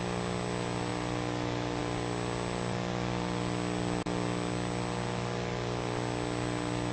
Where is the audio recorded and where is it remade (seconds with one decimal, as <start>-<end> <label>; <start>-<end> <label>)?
0.0-6.9 recorded